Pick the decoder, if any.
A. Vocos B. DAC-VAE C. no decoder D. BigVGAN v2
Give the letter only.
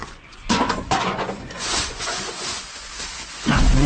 A